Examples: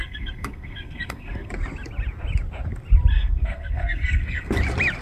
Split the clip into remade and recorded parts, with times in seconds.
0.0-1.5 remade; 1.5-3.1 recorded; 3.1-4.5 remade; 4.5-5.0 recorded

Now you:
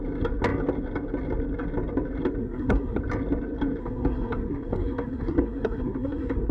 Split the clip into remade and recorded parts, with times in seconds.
0.0-2.4 recorded; 2.4-3.0 remade; 3.0-3.8 recorded; 3.8-6.5 remade

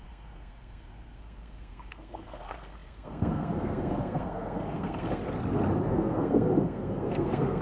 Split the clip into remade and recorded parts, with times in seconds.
0.0-5.2 remade; 5.2-5.9 recorded; 5.9-7.6 remade

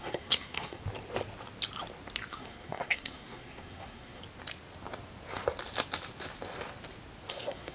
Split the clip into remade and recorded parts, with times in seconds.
0.0-0.8 remade; 0.8-2.3 recorded; 2.3-4.2 remade; 4.2-7.3 recorded; 7.3-7.7 remade

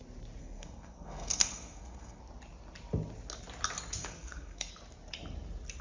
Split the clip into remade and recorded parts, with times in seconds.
0.0-0.4 recorded; 0.4-2.2 remade; 2.2-4.0 recorded; 4.0-4.7 remade; 4.7-5.8 recorded